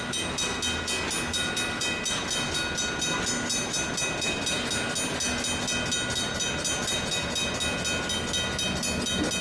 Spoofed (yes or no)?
no